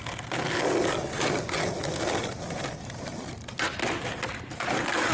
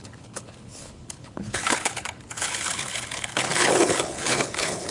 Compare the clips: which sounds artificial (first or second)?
second